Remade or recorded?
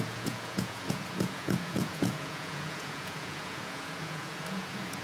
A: remade